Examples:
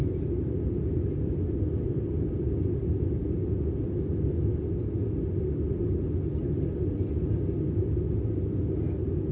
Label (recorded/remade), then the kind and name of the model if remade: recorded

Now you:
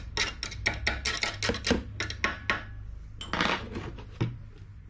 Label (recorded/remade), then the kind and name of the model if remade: recorded